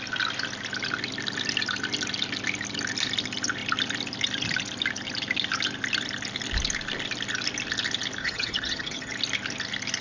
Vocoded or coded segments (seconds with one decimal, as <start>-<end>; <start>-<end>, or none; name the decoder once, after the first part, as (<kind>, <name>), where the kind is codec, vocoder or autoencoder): 8.2-9.1 (vocoder, HiFi-GAN)